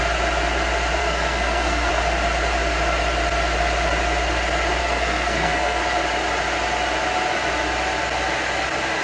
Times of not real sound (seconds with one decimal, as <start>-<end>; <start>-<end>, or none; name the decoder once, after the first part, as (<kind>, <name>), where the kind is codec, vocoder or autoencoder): 1.0-1.9 (codec, SNAC); 4.8-5.8